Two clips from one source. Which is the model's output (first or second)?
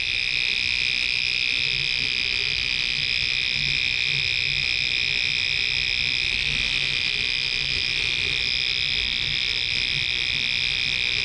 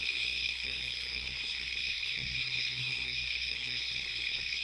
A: second